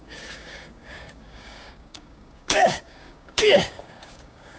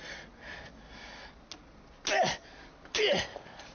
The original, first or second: second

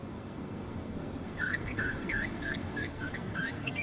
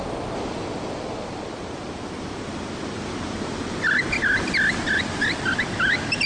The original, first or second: second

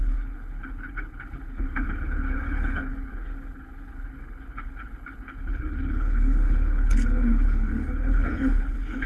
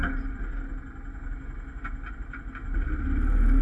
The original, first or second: second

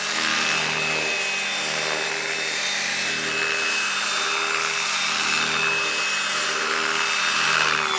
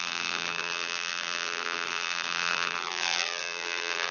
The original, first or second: first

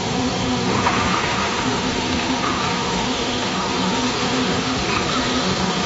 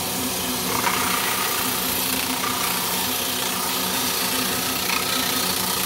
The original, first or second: second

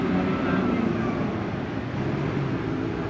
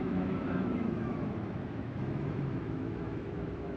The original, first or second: first